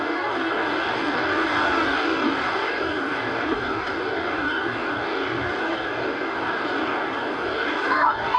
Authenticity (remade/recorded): remade